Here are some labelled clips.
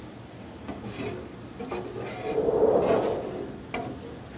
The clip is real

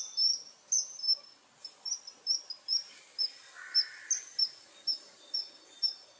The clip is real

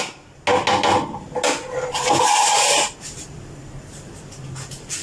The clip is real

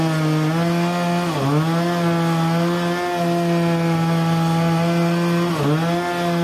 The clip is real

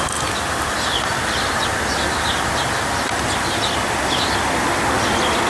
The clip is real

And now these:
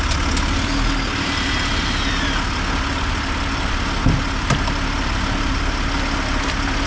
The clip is real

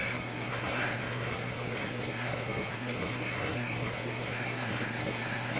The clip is fake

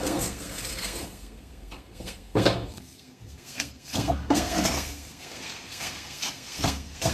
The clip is fake